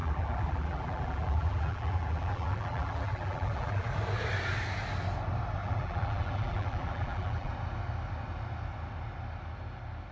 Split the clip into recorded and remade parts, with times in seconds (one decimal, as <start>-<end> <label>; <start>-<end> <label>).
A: 0.0-3.9 remade; 3.9-5.6 recorded; 5.6-7.5 remade; 7.5-10.1 recorded